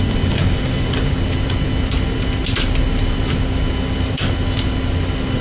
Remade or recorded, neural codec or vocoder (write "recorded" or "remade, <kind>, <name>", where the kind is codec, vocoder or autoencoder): recorded